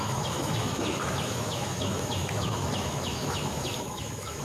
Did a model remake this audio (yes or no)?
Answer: yes